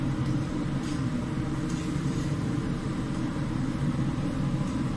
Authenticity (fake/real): fake